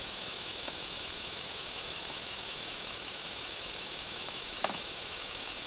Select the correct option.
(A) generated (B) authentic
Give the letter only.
A